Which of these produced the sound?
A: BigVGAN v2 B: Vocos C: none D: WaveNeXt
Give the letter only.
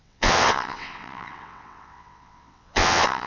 D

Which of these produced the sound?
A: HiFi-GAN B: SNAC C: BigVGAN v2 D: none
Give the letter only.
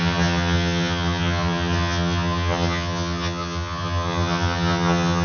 A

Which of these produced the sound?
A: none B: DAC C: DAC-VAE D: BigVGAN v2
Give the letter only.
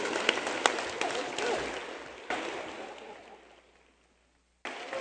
A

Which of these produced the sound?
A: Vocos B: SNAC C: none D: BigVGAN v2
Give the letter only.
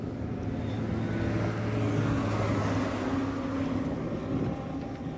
C